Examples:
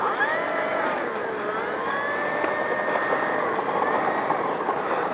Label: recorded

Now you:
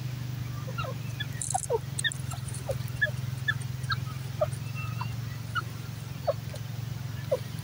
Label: recorded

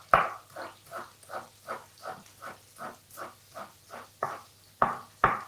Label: recorded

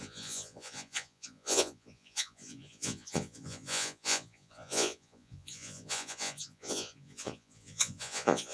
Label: remade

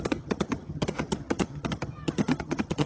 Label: remade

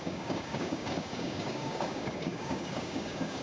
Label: remade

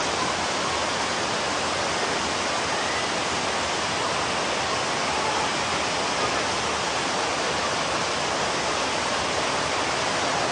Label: recorded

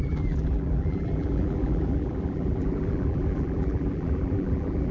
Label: remade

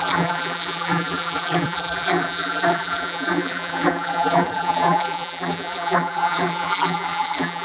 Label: remade